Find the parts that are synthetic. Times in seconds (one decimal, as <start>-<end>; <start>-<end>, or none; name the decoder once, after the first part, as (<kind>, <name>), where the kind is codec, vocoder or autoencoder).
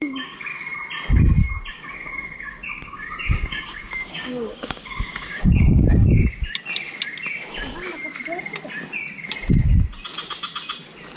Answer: 0.0-0.5 (codec, DAC); 1.7-6.2